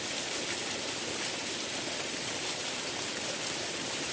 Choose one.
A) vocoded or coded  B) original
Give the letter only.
A